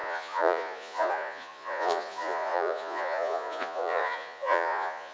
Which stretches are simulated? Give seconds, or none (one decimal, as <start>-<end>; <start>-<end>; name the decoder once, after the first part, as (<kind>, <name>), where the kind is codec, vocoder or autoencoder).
0.0-5.1 (vocoder, Vocos)